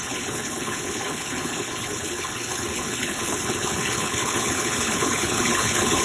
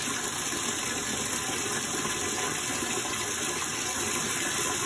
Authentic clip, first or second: second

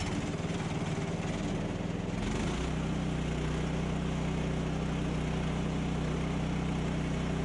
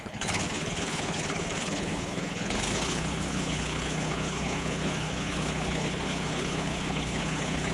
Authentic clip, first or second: first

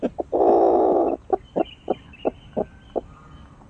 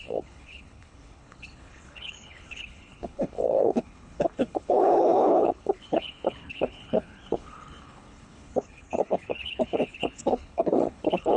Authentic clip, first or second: first